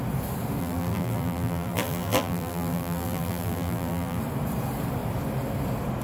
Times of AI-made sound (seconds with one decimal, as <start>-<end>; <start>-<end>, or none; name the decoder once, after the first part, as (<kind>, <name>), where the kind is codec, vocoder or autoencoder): 0.6-4.2 (vocoder, BigVGAN v2)